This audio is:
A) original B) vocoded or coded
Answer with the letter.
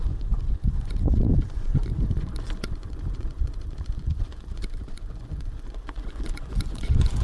B